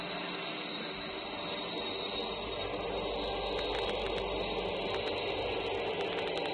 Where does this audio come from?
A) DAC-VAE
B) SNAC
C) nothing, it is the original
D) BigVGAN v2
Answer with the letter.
C